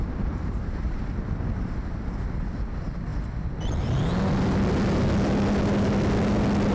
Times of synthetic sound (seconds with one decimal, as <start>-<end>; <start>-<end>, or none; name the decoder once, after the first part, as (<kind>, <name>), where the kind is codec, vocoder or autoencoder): 0.0-3.1 (vocoder, BigVGAN v2)

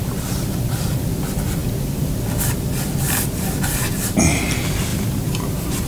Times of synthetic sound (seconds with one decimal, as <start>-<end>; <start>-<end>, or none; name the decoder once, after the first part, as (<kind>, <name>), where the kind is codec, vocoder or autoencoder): 4.9-5.5 (vocoder, BigVGAN v2)